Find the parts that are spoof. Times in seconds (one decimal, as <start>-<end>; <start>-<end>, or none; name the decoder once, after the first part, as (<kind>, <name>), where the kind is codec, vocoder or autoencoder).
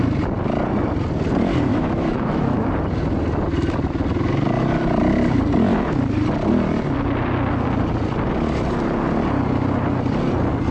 1.7-2.7 (autoencoder, DAC-VAE)